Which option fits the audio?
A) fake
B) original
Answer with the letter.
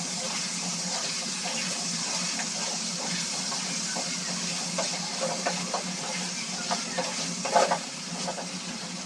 B